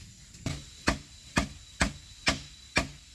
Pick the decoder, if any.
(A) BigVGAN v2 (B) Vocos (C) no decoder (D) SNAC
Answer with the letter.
C